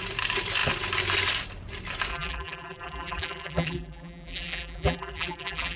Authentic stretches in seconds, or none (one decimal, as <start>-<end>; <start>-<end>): 0.0-2.1